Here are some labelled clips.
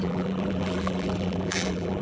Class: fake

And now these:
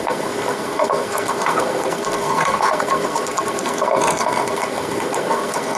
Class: fake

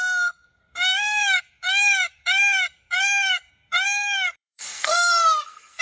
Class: fake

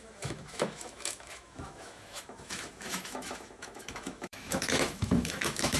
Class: fake